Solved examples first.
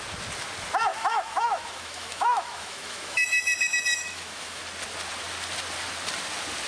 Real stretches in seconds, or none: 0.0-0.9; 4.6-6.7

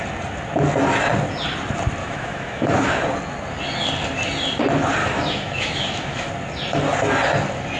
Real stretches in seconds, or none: 0.0-2.0; 2.9-5.0; 6.3-7.8